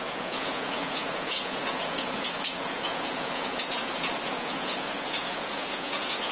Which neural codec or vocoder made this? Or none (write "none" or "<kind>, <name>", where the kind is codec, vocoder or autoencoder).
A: vocoder, Vocos